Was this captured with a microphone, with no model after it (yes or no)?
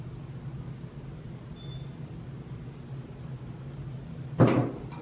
yes